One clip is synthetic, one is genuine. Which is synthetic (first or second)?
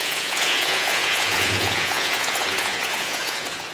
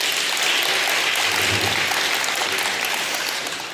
first